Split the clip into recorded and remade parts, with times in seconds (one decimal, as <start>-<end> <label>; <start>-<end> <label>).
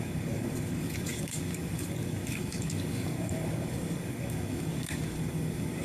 0.0-5.8 remade